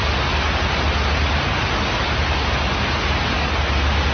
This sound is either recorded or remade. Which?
recorded